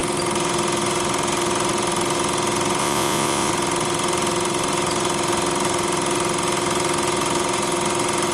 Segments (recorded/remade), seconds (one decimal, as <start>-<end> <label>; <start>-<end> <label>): 0.0-2.8 recorded; 2.8-3.5 remade; 3.5-8.3 recorded